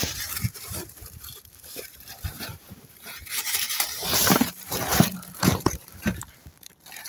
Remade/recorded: remade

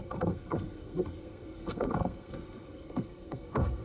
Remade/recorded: remade